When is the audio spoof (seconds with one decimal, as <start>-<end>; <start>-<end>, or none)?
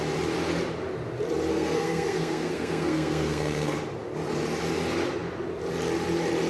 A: 1.5-3.8